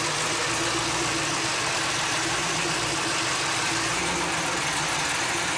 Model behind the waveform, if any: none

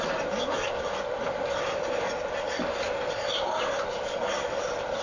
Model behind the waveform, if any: none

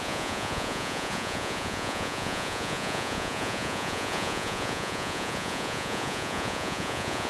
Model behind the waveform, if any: vocoder, Vocos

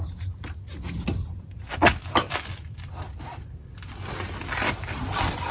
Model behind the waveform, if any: none